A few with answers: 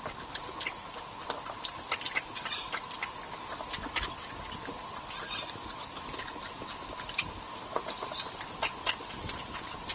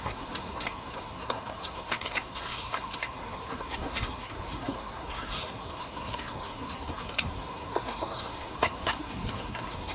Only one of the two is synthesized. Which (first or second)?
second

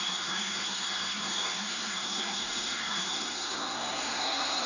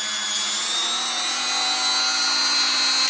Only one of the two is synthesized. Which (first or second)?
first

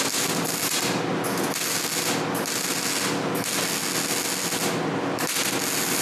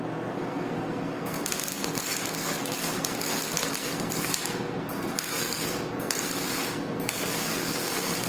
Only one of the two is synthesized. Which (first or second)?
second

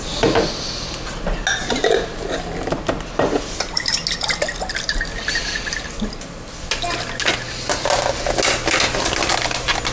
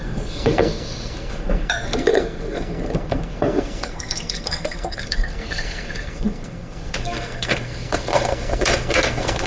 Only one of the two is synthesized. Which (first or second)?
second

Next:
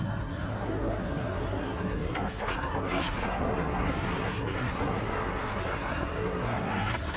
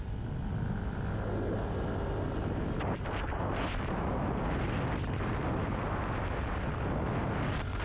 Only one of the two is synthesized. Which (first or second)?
first